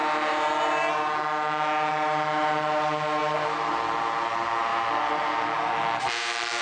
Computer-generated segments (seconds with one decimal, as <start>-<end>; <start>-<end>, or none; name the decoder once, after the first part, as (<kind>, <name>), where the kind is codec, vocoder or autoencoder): none